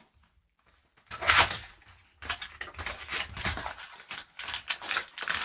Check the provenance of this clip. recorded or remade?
recorded